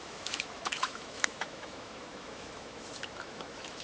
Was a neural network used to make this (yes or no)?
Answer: yes